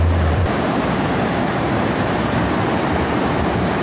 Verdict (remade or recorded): remade